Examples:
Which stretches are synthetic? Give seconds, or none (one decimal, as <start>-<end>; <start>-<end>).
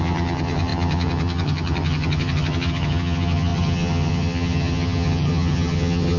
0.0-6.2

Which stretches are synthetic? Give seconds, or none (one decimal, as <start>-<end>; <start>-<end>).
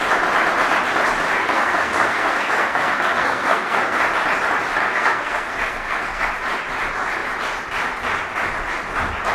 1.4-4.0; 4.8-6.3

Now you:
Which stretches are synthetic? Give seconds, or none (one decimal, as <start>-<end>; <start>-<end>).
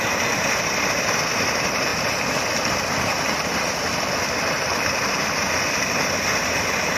0.0-1.9; 5.7-7.0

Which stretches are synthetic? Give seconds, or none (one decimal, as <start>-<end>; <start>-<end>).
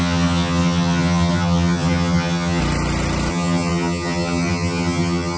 0.0-2.6; 3.3-5.4